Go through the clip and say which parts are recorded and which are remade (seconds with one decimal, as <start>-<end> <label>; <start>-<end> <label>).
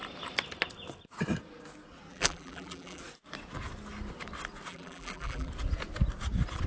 0.0-2.1 recorded; 2.1-3.0 remade; 3.0-4.7 recorded; 4.7-5.5 remade; 5.5-6.7 recorded